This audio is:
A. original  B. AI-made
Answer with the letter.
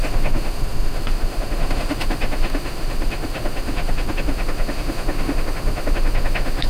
B